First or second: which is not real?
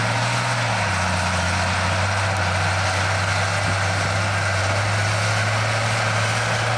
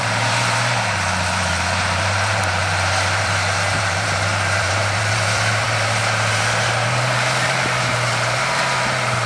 second